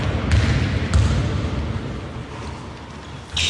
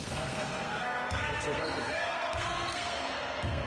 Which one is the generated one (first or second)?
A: second